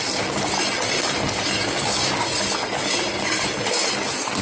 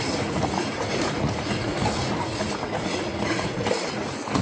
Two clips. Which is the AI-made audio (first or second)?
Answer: second